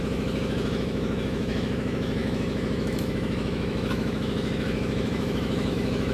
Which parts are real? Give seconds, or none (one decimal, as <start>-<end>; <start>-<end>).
none